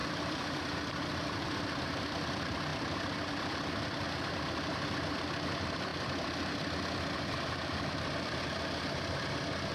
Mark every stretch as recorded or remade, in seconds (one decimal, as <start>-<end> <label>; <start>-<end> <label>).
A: 0.0-0.7 remade; 0.7-2.7 recorded; 2.7-3.8 remade; 3.8-9.7 recorded